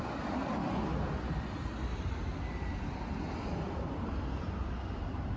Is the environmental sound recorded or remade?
recorded